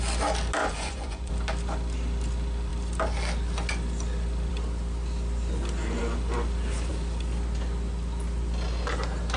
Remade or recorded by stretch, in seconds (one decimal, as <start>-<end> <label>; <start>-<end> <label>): 0.0-0.6 recorded; 0.6-1.3 remade; 1.3-9.4 recorded